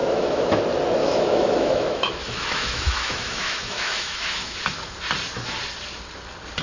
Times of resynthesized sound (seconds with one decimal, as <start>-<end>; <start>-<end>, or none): 0.0-0.6; 1.0-4.6